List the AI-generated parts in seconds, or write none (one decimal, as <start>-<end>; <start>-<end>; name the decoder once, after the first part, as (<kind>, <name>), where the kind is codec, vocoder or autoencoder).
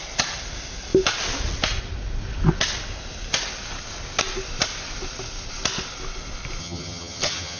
6.6-7.6 (vocoder, HiFi-GAN)